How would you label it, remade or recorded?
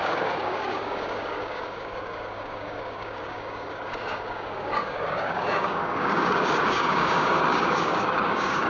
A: remade